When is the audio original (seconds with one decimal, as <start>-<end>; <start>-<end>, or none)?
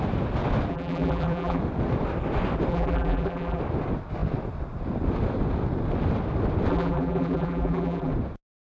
0.0-0.7; 1.6-2.7; 3.6-6.7; 8.1-8.7